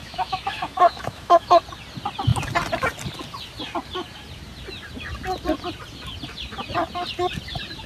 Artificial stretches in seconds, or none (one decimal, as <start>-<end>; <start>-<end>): 0.0-1.6